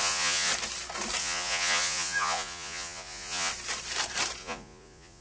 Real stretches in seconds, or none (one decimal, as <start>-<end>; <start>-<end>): 0.5-1.2; 3.5-4.4